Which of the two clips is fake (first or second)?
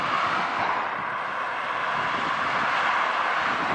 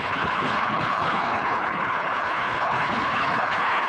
second